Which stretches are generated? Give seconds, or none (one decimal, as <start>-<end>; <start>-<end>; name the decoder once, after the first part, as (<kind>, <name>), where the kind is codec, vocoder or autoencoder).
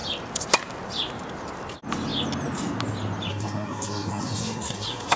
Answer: 3.3-5.2 (codec, SNAC)